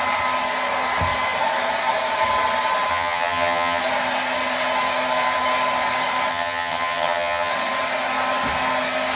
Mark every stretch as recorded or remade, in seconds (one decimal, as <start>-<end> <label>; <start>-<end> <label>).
0.0-2.9 recorded; 2.9-3.8 remade; 3.8-6.3 recorded; 6.3-7.5 remade; 7.5-9.2 recorded